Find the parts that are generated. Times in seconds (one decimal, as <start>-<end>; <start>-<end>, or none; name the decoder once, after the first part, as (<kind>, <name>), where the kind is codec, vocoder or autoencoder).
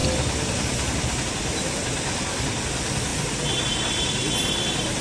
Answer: 1.2-3.1 (vocoder, BigVGAN v2); 3.6-5.0